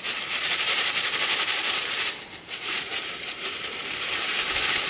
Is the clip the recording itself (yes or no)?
no